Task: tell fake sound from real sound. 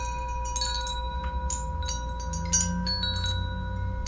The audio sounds real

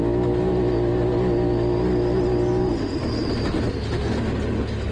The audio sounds real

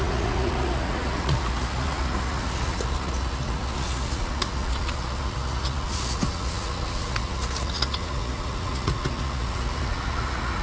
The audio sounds fake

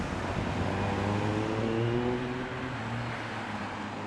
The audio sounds real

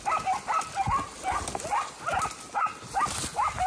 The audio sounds real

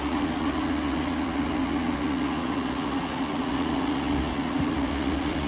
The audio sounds fake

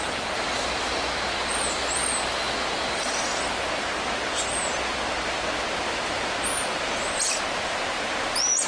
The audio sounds real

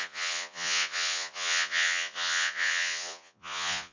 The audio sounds fake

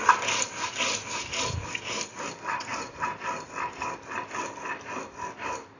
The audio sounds real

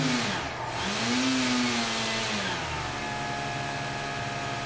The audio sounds real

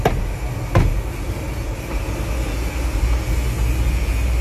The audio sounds real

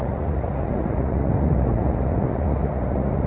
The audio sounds fake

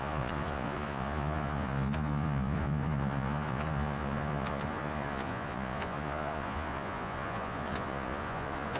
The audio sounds fake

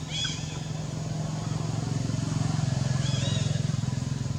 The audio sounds real